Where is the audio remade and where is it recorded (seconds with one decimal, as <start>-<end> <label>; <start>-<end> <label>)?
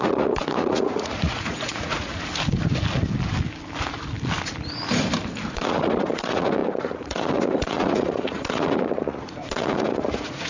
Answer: 0.0-2.1 remade; 2.1-5.4 recorded; 5.4-10.5 remade